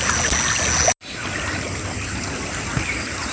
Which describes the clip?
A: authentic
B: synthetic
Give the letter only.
A